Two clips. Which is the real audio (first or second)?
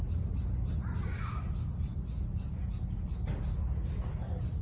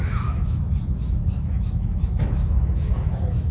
first